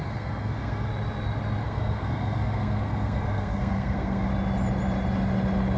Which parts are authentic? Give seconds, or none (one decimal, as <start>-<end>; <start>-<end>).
0.9-1.6; 4.3-5.8